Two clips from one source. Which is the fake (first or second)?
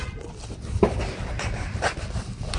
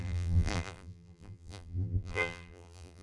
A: second